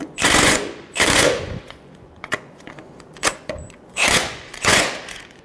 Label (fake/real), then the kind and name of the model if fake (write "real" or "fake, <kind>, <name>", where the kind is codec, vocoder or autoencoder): fake, vocoder, Vocos